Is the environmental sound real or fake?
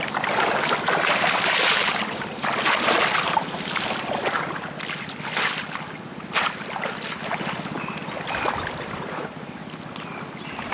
real